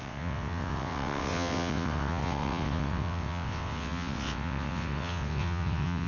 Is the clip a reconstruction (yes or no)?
yes